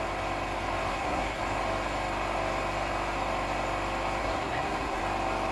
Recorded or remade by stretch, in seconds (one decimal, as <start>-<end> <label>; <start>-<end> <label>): 0.0-0.9 recorded; 0.9-1.4 remade; 1.4-4.2 recorded; 4.2-5.0 remade; 5.0-5.5 recorded